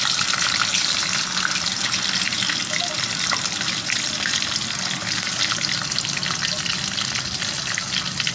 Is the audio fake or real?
real